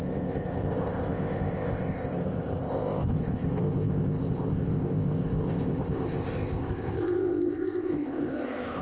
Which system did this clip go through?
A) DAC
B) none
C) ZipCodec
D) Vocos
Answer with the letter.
C